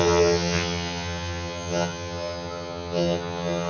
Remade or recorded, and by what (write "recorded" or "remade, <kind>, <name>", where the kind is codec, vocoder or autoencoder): remade, vocoder, HiFi-GAN